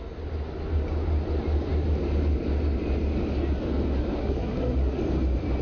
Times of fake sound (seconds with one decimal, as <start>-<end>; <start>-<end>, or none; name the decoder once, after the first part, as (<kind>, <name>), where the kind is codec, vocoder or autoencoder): 4.2-5.0 (codec, SNAC)